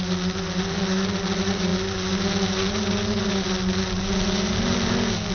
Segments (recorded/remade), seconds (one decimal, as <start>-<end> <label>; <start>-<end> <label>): 0.0-5.3 recorded